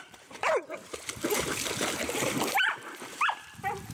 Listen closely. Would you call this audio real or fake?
fake